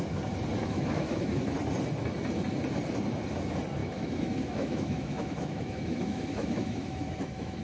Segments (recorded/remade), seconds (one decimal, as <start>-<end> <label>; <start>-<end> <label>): 0.0-0.6 recorded; 0.6-1.4 remade; 1.4-3.8 recorded; 3.8-7.6 remade